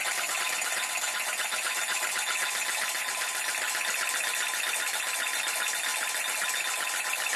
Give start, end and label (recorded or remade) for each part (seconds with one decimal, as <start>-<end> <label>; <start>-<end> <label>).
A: 0.0-7.4 recorded